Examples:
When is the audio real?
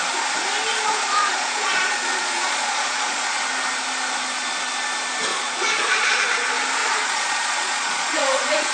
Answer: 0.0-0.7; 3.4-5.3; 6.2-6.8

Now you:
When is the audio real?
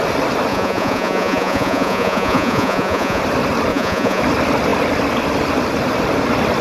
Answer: 0.0-0.5; 3.2-3.7; 4.2-6.6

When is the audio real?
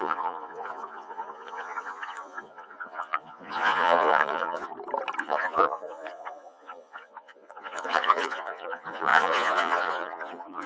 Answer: 4.7-5.2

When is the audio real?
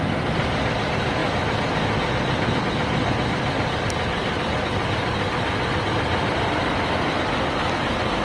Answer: 0.0-8.2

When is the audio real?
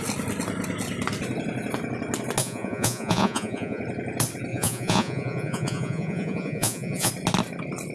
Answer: 0.0-2.4; 3.8-4.5; 7.1-7.9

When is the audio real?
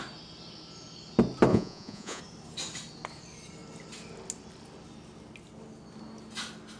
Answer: 0.0-1.5; 2.2-6.8